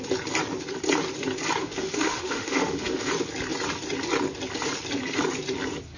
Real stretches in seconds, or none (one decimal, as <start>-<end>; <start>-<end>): 0.0-1.6; 3.1-6.0